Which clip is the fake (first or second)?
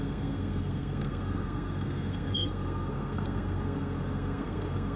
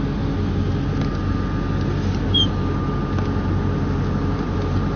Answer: first